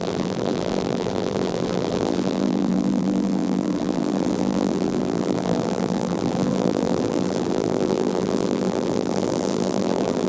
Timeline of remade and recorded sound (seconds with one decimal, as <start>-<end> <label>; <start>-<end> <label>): 0.0-10.3 remade